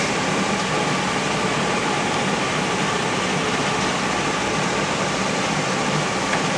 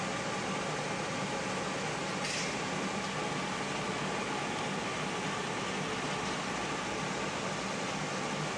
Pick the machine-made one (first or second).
first